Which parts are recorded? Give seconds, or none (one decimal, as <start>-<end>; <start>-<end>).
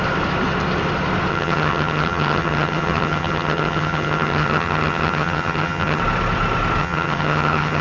0.0-1.3; 6.0-6.8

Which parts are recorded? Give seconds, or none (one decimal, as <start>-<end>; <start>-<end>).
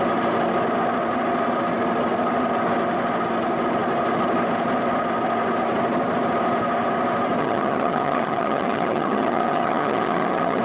0.0-7.4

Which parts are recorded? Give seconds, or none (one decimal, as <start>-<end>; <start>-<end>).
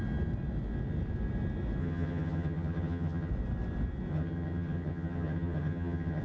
0.0-1.8; 3.3-4.1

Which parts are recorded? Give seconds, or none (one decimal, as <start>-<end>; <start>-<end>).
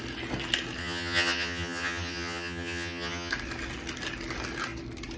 0.0-0.8; 3.3-5.2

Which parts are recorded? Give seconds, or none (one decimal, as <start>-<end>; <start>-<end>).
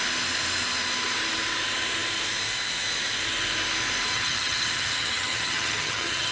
0.0-4.1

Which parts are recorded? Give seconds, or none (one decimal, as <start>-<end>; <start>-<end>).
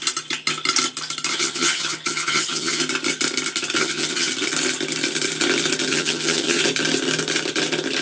0.0-1.3; 2.8-3.8; 4.3-5.9; 6.6-8.0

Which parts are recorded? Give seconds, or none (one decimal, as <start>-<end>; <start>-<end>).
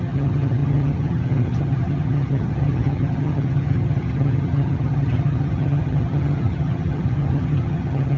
none